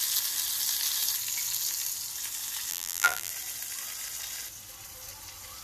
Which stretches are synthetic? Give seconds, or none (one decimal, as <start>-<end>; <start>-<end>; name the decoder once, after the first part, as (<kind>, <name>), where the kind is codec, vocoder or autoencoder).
2.7-3.3 (vocoder, BigVGAN v2)